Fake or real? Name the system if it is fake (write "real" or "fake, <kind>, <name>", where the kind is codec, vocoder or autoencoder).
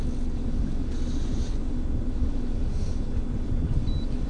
real